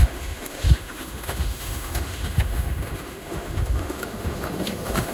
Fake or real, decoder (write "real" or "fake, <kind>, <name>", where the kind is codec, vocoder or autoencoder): fake, autoencoder, DAC-VAE